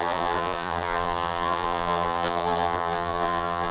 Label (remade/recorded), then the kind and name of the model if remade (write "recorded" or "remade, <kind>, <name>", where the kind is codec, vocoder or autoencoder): remade, vocoder, BigVGAN v2